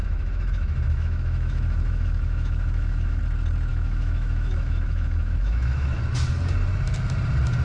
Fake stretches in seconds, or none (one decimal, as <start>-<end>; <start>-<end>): 0.0-3.2; 3.7-6.0